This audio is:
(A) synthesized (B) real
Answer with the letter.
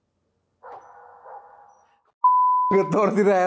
B